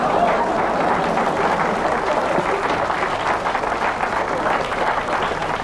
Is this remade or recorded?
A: recorded